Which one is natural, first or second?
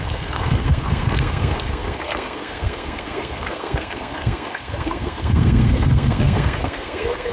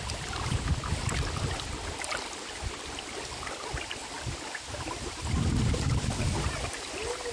second